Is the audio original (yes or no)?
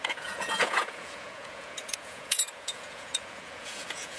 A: no